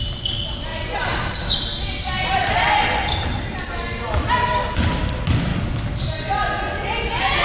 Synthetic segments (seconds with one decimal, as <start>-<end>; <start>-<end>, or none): none